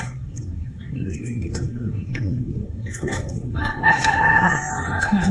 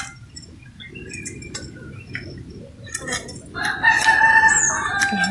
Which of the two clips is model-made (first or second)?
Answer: first